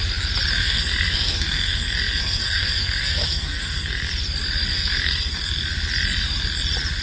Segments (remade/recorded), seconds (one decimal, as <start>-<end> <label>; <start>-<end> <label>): 0.0-0.6 recorded; 0.6-4.1 remade; 4.1-4.7 recorded; 4.7-5.4 remade; 5.4-7.0 recorded